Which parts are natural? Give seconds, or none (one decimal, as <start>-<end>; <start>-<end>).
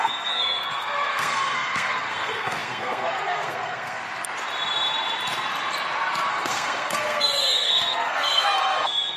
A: 4.0-6.3